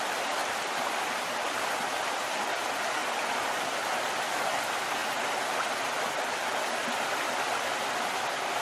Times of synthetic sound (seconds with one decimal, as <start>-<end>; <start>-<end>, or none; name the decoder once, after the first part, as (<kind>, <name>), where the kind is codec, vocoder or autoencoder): none

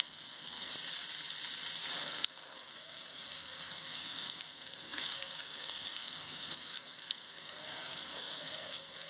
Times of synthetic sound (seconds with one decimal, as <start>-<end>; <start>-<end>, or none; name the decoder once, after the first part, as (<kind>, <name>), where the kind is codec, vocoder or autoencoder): 0.0-0.7 (codec, SNAC); 2.0-9.1

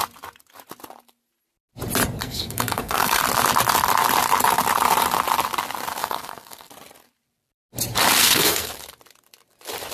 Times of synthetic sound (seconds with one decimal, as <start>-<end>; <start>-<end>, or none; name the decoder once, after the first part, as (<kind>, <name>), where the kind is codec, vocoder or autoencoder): 2.2-3.2 (codec, SNAC); 6.0-6.7; 8.2-8.7

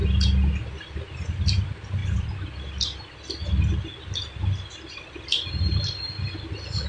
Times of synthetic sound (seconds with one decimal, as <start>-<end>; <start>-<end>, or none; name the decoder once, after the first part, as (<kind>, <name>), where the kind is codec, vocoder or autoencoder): none